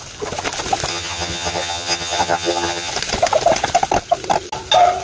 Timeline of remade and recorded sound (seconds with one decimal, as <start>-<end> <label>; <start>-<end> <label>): 0.0-0.9 recorded; 0.9-2.9 remade; 2.9-5.0 recorded